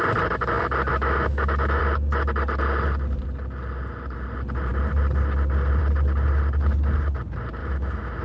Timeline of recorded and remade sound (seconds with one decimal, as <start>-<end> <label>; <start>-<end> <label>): 0.0-0.9 recorded; 0.9-1.8 remade; 1.8-7.6 recorded; 7.6-8.2 remade